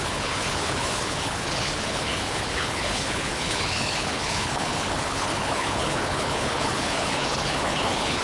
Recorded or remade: remade